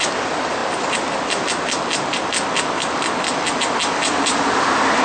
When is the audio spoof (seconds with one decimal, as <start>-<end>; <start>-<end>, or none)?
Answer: none